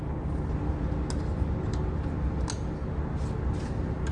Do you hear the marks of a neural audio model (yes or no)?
no